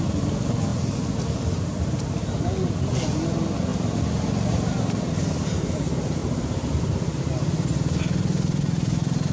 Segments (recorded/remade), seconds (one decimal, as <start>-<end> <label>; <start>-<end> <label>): 0.0-6.2 recorded; 6.2-7.3 remade; 7.3-9.3 recorded